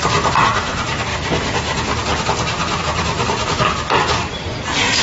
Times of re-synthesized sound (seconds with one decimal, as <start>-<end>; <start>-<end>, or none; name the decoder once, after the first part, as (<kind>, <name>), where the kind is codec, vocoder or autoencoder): none